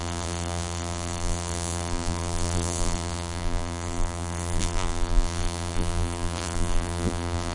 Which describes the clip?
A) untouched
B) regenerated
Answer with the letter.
B